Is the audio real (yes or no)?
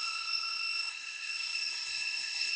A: no